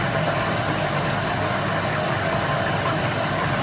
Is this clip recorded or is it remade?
recorded